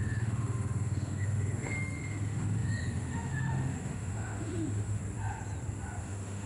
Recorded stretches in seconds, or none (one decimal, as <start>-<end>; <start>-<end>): 5.0-6.0